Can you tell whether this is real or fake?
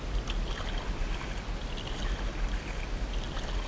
real